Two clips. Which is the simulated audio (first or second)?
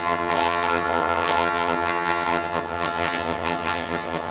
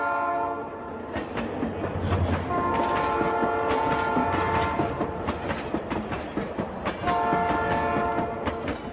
first